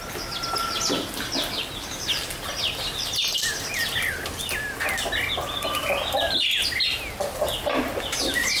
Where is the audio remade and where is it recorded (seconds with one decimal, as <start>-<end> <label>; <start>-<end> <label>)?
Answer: 0.0-8.6 recorded